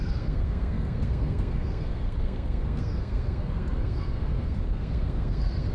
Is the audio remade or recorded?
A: remade